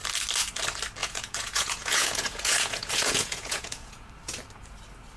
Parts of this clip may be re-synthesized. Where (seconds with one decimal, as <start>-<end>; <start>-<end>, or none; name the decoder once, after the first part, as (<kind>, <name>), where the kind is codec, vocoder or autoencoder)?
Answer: 1.0-4.1 (vocoder, Vocos)